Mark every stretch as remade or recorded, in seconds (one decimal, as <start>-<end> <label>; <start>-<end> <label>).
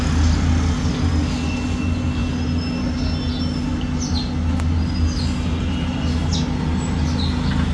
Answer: 0.0-7.7 recorded